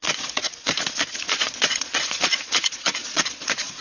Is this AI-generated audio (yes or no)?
yes